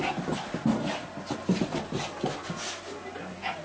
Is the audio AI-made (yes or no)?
no